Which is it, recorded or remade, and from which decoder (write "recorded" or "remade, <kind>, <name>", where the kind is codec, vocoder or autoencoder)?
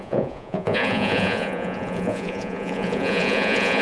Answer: remade, vocoder, Vocos